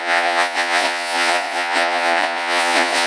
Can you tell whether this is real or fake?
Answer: fake